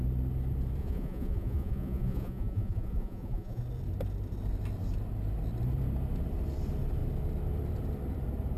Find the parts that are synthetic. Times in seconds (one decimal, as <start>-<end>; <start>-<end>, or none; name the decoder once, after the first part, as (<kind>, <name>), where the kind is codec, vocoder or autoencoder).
0.8-3.6 (vocoder, Vocos)